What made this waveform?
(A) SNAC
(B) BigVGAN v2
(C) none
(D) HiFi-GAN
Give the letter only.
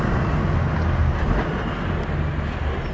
C